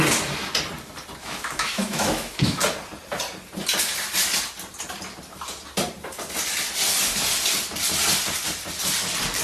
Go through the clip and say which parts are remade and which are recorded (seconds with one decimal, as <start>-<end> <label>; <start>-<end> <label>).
0.0-1.2 recorded; 1.2-2.6 remade; 2.6-9.4 recorded